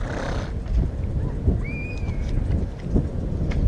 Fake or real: real